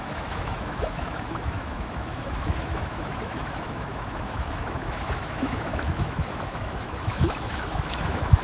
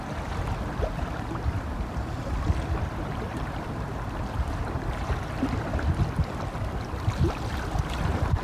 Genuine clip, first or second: second